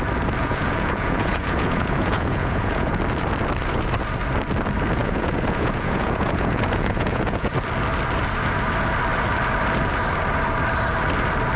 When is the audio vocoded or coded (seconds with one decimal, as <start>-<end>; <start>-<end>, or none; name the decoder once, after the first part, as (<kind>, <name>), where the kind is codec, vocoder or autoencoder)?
0.4-3.0 (vocoder, Vocos); 5.0-7.5